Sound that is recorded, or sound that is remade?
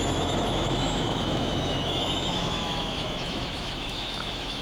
remade